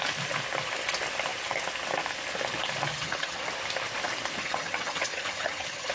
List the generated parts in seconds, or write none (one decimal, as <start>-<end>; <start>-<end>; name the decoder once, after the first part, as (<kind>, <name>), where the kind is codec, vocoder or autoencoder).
2.9-3.5 (vocoder, HiFi-GAN); 4.4-5.9